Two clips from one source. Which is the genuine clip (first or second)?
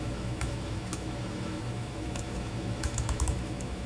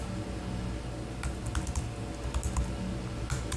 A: second